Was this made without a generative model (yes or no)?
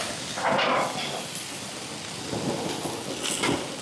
yes